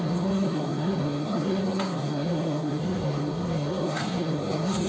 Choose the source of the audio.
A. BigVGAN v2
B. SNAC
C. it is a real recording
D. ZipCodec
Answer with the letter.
B